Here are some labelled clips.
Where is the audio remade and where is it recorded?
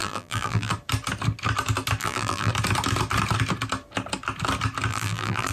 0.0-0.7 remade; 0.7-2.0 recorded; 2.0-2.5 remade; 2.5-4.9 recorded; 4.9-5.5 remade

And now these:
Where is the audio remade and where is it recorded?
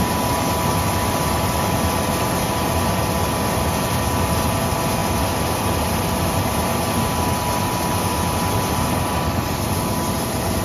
0.0-10.6 recorded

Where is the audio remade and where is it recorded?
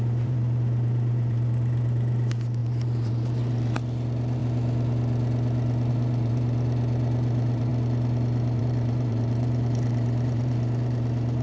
0.0-4.4 remade; 4.4-5.9 recorded; 5.9-7.7 remade; 7.7-8.6 recorded; 8.6-11.4 remade